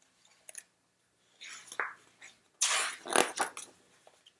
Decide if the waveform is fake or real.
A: real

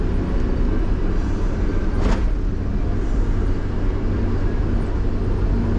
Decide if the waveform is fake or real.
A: real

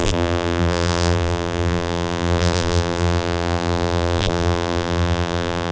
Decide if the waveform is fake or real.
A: fake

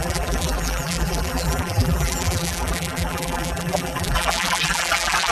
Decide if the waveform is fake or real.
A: fake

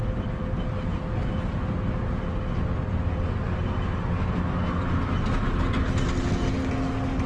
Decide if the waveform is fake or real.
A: real